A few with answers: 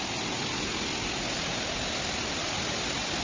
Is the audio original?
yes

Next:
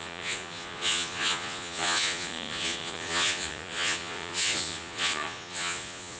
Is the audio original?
no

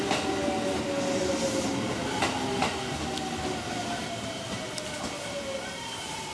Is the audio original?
yes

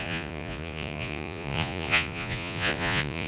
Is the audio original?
no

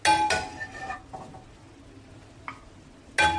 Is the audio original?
yes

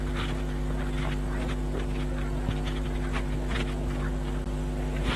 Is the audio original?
yes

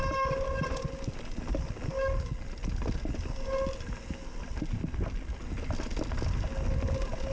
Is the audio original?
yes